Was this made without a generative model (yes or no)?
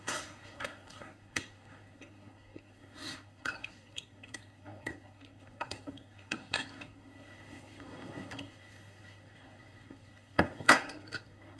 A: no